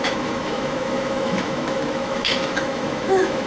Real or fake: fake